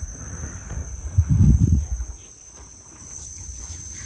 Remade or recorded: remade